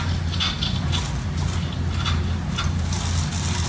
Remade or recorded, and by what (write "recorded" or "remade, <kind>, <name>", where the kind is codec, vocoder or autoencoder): recorded